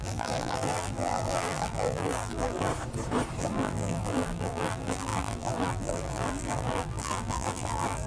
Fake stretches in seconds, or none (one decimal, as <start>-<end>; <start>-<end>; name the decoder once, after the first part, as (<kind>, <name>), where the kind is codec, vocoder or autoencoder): 0.0-2.7 (vocoder, BigVGAN v2); 3.4-8.1